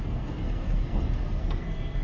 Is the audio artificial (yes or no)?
yes